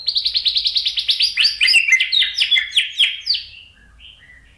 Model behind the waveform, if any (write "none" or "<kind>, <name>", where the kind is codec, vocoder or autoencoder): none